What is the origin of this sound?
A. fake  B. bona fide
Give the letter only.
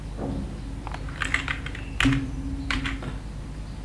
B